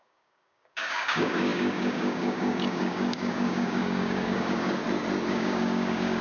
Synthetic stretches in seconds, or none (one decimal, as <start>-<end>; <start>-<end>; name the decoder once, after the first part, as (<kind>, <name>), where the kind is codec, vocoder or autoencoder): 0.0-4.8 (codec, DAC); 5.3-6.2

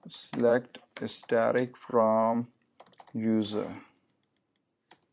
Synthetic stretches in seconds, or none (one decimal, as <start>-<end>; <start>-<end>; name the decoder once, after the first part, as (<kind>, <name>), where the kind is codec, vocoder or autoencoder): 0.5-1.2 (vocoder, BigVGAN v2); 1.9-2.6

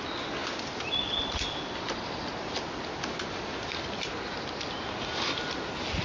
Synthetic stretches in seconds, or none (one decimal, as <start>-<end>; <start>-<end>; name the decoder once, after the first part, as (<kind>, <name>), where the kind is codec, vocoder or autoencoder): none

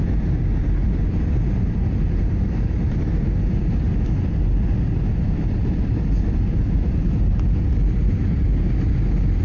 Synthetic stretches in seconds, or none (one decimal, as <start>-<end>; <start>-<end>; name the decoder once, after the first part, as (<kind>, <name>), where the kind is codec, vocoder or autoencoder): 5.6-7.1 (vocoder, BigVGAN v2)

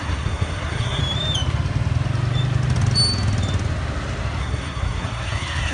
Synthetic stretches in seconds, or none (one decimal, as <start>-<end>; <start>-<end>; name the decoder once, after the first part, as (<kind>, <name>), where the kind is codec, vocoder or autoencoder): 0.0-1.0 (codec, SNAC); 4.4-5.7

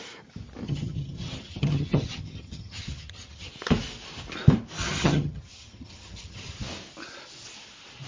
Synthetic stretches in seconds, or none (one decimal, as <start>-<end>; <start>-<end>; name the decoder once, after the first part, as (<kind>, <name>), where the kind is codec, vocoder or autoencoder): 0.6-3.5 (vocoder, HiFi-GAN); 4.8-6.6